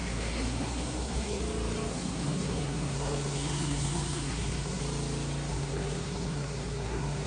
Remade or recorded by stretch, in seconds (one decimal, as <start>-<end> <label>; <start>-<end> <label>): 0.0-1.4 remade; 1.4-1.9 recorded; 1.9-4.8 remade; 4.8-5.5 recorded; 5.5-7.3 remade